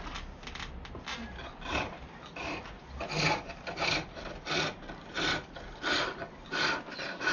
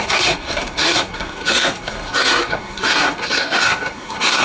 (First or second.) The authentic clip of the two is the first